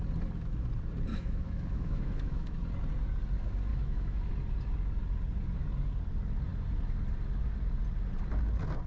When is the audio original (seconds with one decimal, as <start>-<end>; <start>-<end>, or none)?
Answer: 0.0-1.1; 2.6-3.7; 4.3-8.9